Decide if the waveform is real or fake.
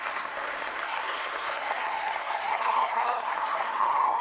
fake